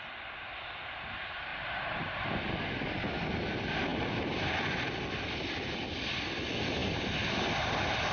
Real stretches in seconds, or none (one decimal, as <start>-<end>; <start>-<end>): 0.0-1.5; 2.3-8.1

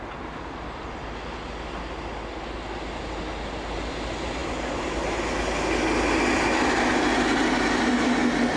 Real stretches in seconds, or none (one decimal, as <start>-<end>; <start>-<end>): 0.0-8.6

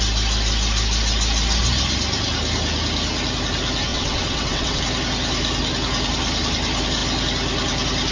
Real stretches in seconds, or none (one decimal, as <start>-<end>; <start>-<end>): 0.0-3.9; 4.8-8.1

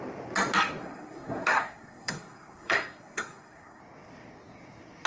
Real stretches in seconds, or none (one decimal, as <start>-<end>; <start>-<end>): 0.0-0.8; 3.8-5.1